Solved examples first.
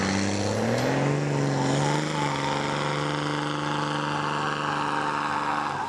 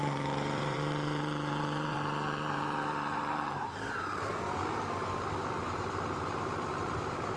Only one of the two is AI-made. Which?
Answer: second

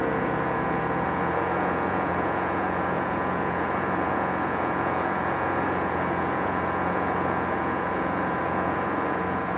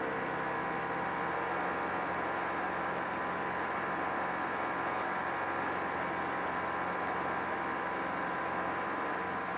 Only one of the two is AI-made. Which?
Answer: first